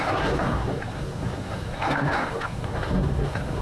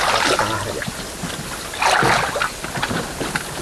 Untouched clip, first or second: second